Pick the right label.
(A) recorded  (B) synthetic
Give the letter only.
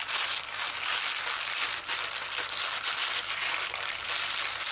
A